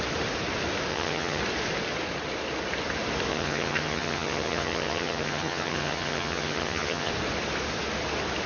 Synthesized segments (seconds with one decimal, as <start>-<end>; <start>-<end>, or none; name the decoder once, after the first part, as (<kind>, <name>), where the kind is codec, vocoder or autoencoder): 0.9-1.4 (vocoder, HiFi-GAN); 3.3-7.1